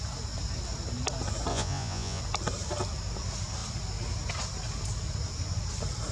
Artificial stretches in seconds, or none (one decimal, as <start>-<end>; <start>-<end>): 1.5-2.2